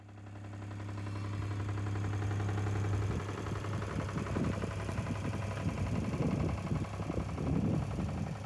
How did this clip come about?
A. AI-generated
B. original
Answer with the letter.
B